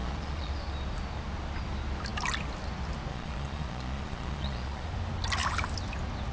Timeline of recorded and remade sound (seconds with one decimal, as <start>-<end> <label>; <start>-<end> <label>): 0.0-0.5 remade; 0.5-3.1 recorded; 3.1-4.9 remade; 4.9-6.3 recorded